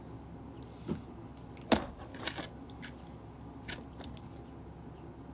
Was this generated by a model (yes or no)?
no